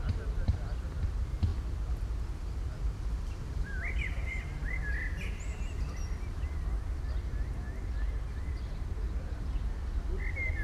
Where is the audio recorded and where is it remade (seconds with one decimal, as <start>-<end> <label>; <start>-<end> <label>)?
0.0-1.5 recorded; 1.5-4.9 remade; 4.9-10.6 recorded